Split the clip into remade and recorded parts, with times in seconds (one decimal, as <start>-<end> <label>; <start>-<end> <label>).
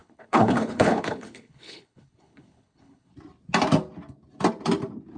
0.0-3.1 remade; 3.1-5.2 recorded